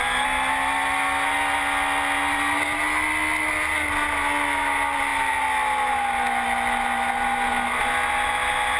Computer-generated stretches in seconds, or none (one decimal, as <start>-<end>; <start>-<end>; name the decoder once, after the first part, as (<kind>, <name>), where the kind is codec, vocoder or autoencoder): none

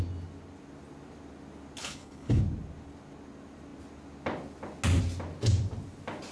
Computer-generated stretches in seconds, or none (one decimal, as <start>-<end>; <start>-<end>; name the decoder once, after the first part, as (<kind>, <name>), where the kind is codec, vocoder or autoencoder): 1.8-2.4 (codec, HILCodec)

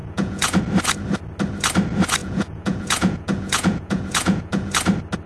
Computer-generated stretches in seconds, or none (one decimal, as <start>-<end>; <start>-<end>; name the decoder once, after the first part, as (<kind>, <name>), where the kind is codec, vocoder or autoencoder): 0.0-0.6 (vocoder, Vocos); 2.2-4.7

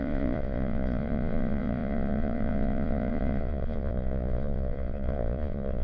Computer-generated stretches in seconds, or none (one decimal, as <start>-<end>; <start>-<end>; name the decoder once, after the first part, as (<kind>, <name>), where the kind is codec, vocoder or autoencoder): 0.0-5.8 (vocoder, Vocos)

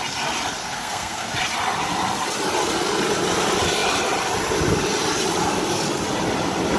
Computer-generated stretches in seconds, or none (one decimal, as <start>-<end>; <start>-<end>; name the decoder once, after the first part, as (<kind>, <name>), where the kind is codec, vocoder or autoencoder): 0.6-1.3 (codec, SNAC)